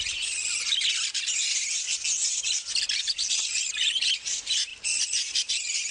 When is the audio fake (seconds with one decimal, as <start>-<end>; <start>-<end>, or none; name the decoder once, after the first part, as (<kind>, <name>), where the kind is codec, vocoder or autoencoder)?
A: 0.0-0.4 (vocoder, BigVGAN v2); 3.3-5.9